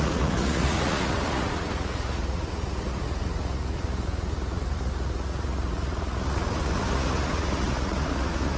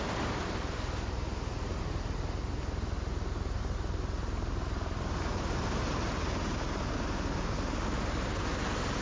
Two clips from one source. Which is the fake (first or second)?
first